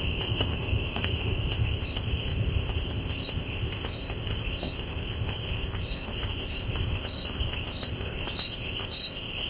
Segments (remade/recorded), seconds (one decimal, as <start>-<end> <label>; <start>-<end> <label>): 0.0-9.5 remade